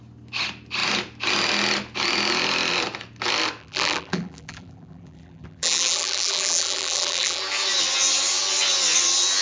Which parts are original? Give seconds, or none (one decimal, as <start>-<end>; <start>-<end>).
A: 0.0-3.6; 7.4-9.4